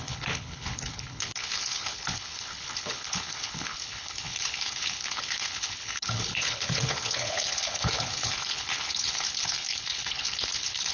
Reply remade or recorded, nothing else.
remade